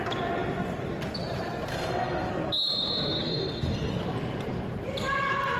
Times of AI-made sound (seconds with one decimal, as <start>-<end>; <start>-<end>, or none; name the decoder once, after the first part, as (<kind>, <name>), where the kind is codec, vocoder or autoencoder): 1.7-2.3 (codec, SNAC); 3.2-3.9